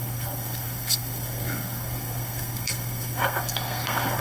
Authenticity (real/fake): fake